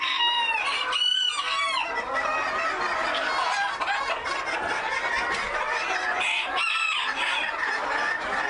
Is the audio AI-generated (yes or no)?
no